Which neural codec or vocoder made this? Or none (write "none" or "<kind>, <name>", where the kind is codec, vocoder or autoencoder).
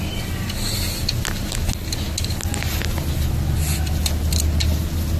none